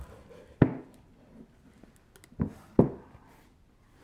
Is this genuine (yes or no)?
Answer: yes